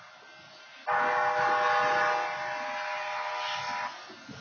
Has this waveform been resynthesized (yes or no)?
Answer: no